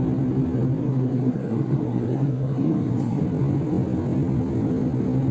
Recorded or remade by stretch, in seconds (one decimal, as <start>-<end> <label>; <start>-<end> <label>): 0.0-0.8 recorded; 0.8-3.2 remade; 3.2-5.3 recorded